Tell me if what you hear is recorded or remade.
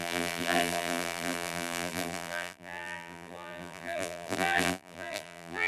remade